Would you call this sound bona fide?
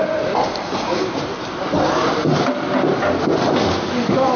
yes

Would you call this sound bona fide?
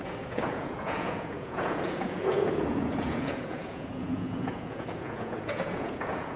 no